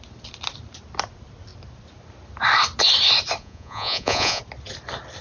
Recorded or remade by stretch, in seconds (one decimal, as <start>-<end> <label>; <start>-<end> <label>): 0.0-3.4 recorded; 3.4-4.4 remade; 4.4-5.2 recorded